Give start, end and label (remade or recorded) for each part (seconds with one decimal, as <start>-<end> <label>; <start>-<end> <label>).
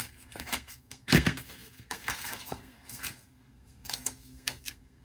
0.0-5.0 remade